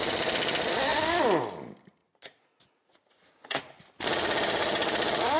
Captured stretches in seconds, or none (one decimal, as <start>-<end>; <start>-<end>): 0.0-2.0; 3.6-5.4